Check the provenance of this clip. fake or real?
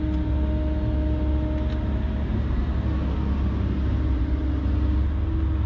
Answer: real